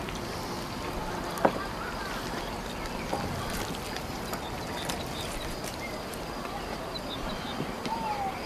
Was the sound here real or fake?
real